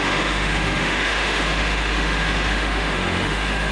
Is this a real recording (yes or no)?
no